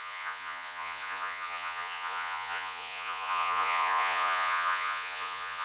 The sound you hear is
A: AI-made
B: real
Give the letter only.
A